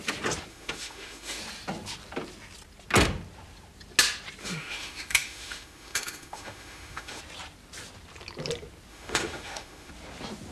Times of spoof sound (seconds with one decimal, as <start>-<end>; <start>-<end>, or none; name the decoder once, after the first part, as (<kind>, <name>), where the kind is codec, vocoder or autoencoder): 0.5-1.4 (autoencoder, DAC-VAE); 4.4-7.2; 8.9-9.9